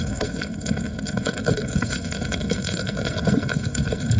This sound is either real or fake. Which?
fake